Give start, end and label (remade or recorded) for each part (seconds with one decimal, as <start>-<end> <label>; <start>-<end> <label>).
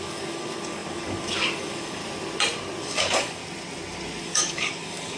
0.0-2.0 remade; 2.0-2.8 recorded; 2.8-3.4 remade; 3.4-4.2 recorded; 4.2-5.2 remade